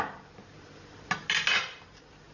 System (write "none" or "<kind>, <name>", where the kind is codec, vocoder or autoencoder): none